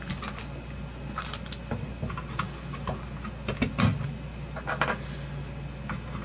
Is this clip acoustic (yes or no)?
yes